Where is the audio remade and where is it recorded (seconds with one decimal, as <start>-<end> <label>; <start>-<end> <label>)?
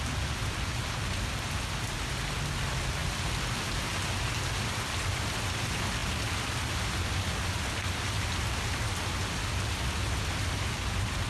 0.0-11.3 recorded